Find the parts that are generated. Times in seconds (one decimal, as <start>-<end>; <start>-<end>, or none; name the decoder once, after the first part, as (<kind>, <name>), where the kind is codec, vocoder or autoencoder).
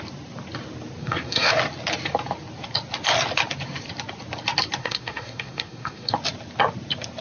1.0-1.5 (codec, SNAC); 4.8-6.1